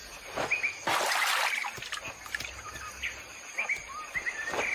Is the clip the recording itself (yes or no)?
yes